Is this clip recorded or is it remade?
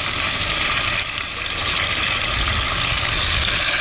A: remade